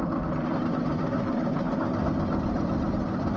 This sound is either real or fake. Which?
real